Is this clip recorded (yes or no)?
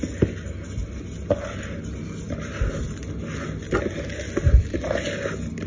yes